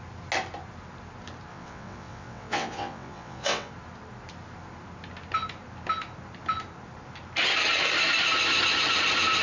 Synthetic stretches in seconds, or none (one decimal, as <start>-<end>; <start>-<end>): 1.5-3.7